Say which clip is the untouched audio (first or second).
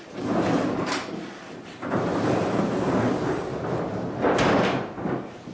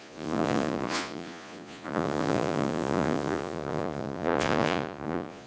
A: first